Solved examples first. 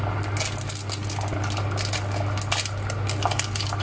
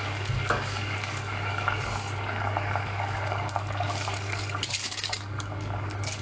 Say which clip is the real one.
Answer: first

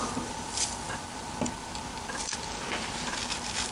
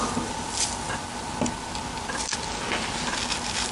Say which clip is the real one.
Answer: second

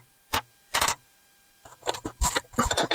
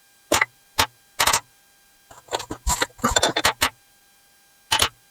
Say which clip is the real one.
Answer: second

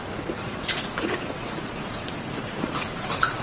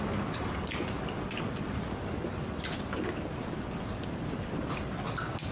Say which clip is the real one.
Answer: second